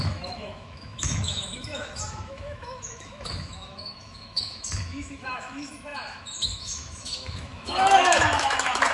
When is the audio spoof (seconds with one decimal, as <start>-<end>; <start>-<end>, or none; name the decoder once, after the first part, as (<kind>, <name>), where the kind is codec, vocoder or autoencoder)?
0.0-8.9 (autoencoder, DAC-VAE)